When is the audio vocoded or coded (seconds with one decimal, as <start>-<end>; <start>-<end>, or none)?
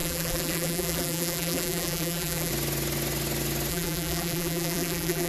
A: 0.0-2.5; 3.7-5.3